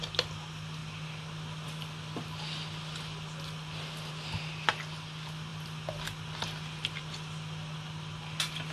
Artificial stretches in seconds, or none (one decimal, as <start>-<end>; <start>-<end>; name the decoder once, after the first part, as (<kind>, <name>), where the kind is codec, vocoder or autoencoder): none